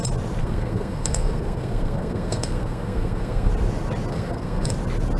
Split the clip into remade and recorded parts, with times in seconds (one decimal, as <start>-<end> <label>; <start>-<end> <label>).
0.0-0.4 recorded; 0.4-3.5 remade; 3.5-4.1 recorded; 4.1-4.7 remade; 4.7-5.2 recorded